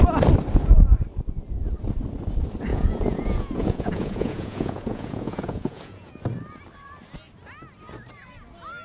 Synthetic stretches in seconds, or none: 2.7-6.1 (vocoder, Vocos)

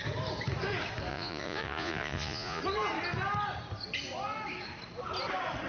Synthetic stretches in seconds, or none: 1.1-2.6 (vocoder, Vocos)

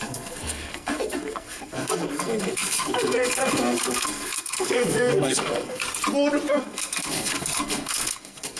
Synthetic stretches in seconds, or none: 0.0-5.8 (codec, SNAC); 6.5-8.6

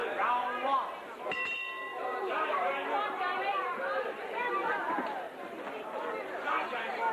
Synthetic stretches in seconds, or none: 1.9-4.7 (vocoder, BigVGAN v2)

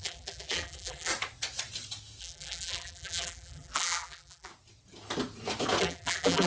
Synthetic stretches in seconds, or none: 0.0-1.1 (vocoder, BigVGAN v2); 2.2-4.5; 5.8-6.5